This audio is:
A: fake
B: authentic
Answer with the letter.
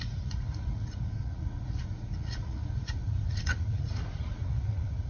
A